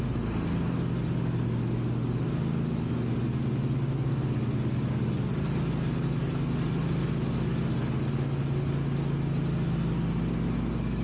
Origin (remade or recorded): recorded